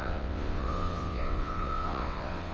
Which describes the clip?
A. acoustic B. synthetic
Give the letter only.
B